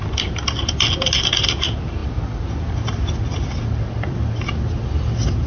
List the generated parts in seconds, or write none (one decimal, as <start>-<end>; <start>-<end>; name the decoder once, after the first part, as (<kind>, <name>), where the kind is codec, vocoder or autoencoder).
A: none

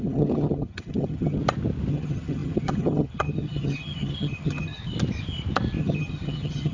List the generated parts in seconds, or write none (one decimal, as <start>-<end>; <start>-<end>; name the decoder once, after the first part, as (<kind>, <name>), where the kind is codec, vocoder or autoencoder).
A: 0.0-1.4 (vocoder, HiFi-GAN); 1.9-4.8; 5.8-6.7

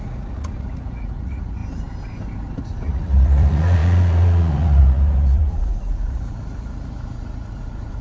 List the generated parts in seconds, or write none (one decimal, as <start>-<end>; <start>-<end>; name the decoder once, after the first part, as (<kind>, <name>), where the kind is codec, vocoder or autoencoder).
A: 0.0-1.6 (vocoder, Vocos); 2.6-8.0

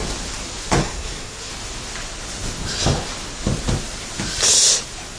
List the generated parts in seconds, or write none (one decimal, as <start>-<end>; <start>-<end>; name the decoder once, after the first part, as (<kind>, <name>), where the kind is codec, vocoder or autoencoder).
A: 0.8-1.5 (codec, SNAC)

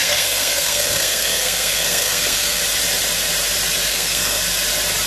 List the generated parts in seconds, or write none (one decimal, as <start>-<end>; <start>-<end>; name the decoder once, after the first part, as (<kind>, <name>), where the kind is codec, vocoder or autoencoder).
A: 0.0-2.6 (codec, SNAC); 3.9-4.4

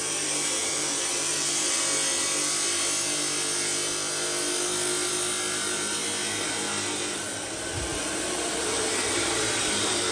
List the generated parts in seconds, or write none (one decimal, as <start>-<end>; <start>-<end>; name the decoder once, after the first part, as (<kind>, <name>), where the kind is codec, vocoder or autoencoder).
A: 0.0-1.8 (vocoder, BigVGAN v2); 7.9-10.1